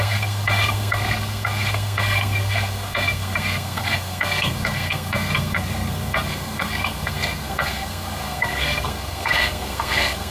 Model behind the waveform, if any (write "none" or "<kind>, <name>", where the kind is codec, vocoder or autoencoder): codec, SNAC